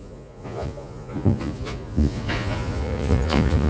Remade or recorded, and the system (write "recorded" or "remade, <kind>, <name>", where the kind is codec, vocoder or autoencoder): remade, vocoder, Vocos